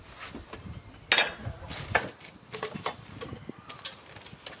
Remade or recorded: recorded